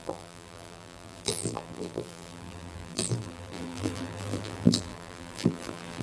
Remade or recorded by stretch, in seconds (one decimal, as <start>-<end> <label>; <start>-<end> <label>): 0.0-6.0 remade